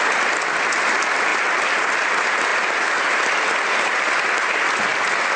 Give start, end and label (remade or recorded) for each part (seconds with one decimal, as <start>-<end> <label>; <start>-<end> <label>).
0.0-1.3 recorded; 1.3-2.1 remade; 2.1-2.5 recorded; 2.5-3.3 remade; 3.3-5.4 recorded

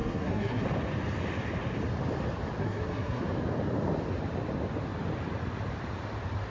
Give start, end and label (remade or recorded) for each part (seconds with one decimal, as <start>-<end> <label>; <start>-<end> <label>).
0.0-0.6 remade; 0.6-2.6 recorded; 2.6-3.2 remade; 3.2-6.5 recorded